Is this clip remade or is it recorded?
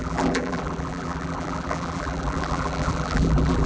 remade